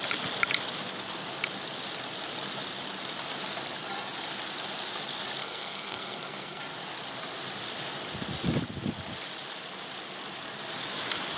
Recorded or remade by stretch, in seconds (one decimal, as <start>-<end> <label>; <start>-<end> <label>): 0.0-5.4 recorded; 5.4-6.6 remade; 6.6-11.4 recorded